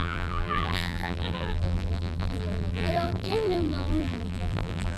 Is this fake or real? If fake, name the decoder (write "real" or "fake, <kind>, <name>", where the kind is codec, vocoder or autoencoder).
fake, vocoder, BigVGAN v2